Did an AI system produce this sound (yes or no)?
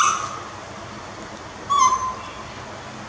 no